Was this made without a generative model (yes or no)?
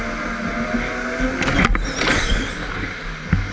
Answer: yes